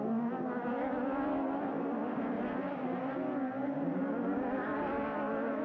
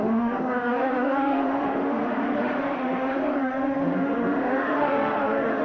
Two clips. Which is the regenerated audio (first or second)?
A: second